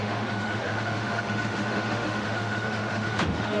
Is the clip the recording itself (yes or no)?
no